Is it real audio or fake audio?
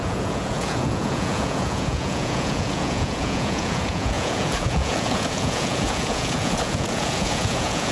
fake